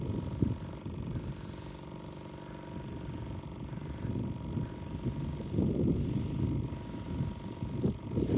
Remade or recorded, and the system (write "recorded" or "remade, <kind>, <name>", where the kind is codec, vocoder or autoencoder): recorded